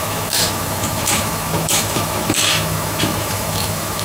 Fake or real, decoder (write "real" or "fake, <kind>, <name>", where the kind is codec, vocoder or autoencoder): fake, autoencoder, DAC-VAE